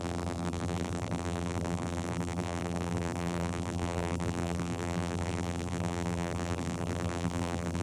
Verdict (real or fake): fake